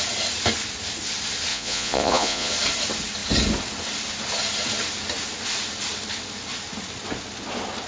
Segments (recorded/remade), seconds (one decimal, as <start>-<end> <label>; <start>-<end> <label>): 0.0-1.5 recorded; 1.5-2.5 remade; 2.5-7.9 recorded